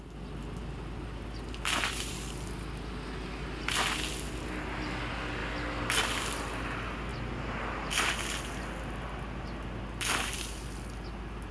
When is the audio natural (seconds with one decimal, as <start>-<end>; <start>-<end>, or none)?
0.0-11.5